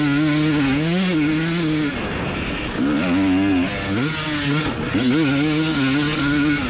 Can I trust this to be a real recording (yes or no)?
yes